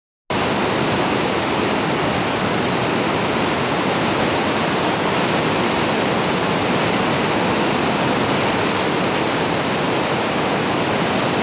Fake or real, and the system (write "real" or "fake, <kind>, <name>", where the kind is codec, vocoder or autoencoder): real